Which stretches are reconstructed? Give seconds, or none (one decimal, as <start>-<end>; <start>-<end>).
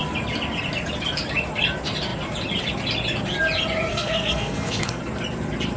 3.9-5.0